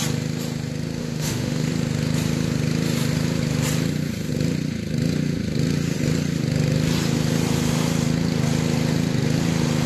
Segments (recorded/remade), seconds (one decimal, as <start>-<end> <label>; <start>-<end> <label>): 0.0-1.0 recorded; 1.0-1.7 remade; 1.7-9.9 recorded